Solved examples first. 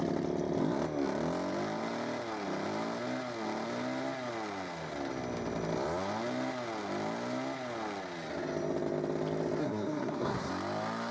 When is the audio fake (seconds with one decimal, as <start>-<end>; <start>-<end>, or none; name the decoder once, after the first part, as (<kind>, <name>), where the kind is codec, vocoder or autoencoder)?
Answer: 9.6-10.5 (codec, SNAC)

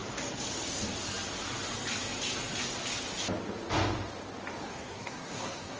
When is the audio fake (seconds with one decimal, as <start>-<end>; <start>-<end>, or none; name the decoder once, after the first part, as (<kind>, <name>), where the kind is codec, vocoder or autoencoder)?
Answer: 4.7-5.8 (codec, SNAC)

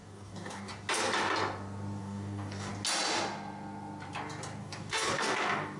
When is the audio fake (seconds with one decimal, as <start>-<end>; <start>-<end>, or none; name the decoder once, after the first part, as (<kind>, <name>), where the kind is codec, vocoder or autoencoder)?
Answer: 0.0-0.7 (codec, DAC); 2.0-2.7; 4.6-5.8

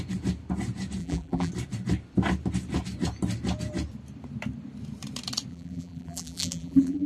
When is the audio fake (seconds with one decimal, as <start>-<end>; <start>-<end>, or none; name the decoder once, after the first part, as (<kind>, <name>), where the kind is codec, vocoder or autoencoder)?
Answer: 1.0-1.5 (vocoder, BigVGAN v2); 5.5-7.1

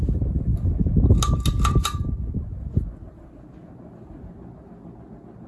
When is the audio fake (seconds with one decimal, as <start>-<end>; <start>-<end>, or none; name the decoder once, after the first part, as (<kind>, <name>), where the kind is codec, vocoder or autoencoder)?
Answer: none